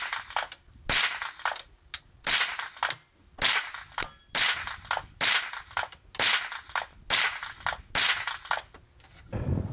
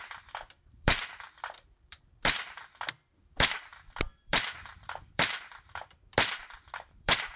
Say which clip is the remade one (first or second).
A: second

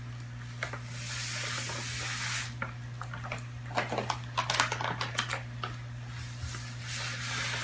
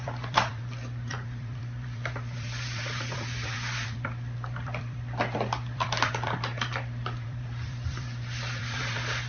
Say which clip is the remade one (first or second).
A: second